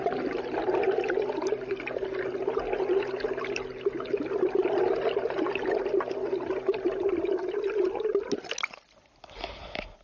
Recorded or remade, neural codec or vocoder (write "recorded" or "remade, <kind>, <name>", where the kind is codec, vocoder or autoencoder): recorded